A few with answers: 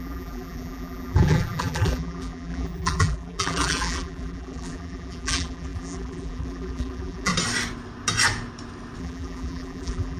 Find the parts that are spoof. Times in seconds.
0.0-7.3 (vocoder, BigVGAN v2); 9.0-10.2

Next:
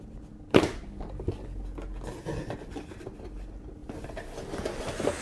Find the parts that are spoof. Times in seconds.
none

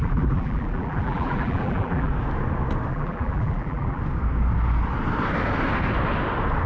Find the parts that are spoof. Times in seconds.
0.0-2.1 (vocoder, BigVGAN v2); 2.9-4.0

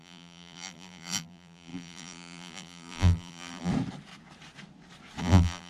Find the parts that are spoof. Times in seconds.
0.0-3.7 (vocoder, BigVGAN v2); 5.2-5.7